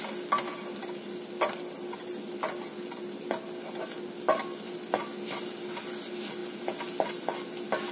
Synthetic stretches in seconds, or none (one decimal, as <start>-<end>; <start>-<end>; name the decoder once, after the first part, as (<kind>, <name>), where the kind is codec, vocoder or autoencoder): none